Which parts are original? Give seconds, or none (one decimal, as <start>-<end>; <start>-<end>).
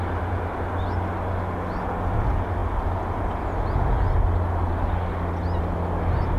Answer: 0.0-6.4